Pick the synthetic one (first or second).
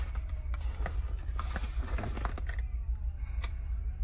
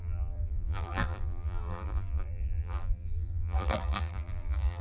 second